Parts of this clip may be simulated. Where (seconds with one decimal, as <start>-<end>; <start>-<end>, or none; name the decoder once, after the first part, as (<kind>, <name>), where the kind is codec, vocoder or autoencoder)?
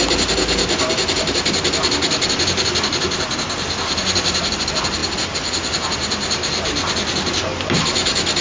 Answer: none